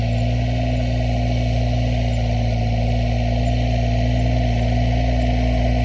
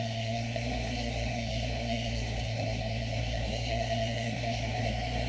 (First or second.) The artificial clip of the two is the second